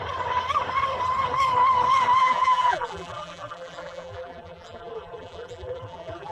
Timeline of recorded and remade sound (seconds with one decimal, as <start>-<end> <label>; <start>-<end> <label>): 0.0-2.2 recorded; 2.2-6.3 remade